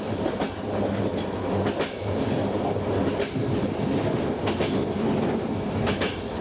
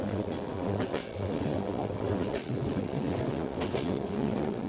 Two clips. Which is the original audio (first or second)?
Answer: first